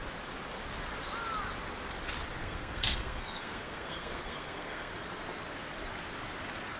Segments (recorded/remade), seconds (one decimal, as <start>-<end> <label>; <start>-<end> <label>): 0.0-2.4 recorded; 2.4-4.9 remade; 4.9-6.8 recorded